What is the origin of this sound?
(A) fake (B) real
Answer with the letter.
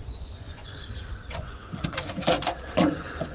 A